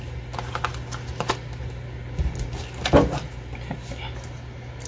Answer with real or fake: real